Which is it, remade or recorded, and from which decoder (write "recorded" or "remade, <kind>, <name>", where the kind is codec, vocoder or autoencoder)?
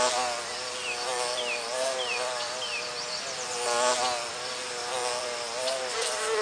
recorded